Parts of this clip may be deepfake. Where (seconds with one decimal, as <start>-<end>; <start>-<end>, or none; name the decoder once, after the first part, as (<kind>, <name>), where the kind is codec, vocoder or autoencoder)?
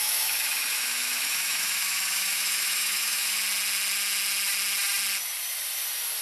0.0-3.4 (autoencoder, DAC-VAE)